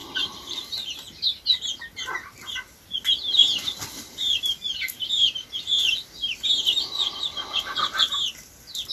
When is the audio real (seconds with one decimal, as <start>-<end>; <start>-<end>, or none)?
0.9-3.4; 5.1-8.9